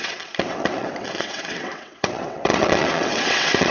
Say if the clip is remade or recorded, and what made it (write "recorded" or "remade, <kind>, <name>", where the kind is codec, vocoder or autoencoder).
remade, vocoder, WaveNeXt